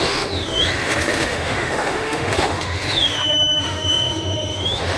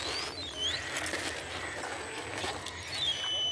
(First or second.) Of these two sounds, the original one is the second